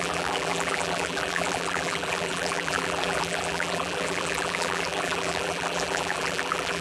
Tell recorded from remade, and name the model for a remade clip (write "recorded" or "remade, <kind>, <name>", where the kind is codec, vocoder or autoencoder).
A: remade, vocoder, BigVGAN v2